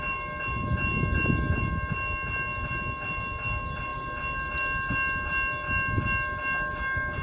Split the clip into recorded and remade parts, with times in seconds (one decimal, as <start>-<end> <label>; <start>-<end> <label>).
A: 0.0-7.2 recorded